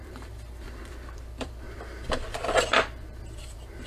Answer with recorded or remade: remade